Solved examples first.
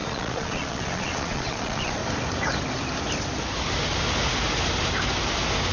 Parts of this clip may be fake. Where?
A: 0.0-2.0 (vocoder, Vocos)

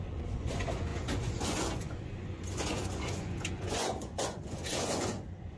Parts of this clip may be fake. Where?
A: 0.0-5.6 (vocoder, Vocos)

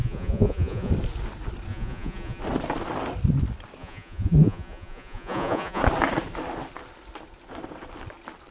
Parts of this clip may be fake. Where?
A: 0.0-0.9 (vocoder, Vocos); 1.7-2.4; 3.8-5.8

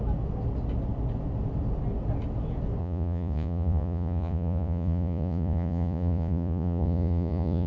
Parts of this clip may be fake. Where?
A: 2.8-7.7 (vocoder, Vocos)

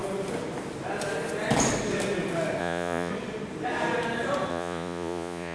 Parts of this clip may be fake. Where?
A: 2.6-3.1 (vocoder, Vocos); 4.5-5.5